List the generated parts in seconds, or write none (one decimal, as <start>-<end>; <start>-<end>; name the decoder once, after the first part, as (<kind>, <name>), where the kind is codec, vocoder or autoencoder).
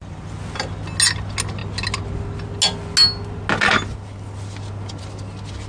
none